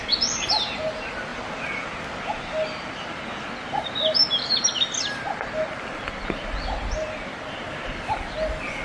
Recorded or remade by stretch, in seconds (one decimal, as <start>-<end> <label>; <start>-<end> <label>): 0.0-8.8 recorded